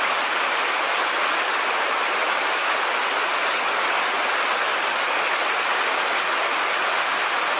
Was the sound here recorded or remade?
recorded